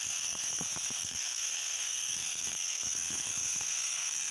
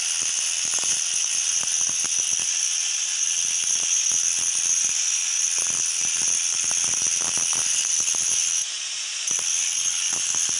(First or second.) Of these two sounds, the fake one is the first